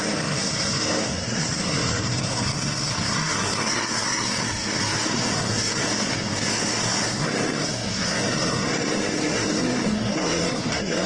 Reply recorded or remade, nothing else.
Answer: remade